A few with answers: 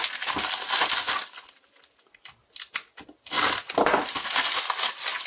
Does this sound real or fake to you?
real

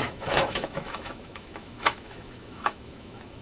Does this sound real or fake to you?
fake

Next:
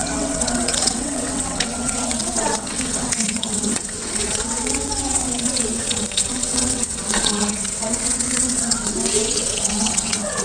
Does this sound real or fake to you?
fake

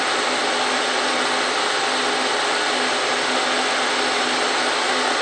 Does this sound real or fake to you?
real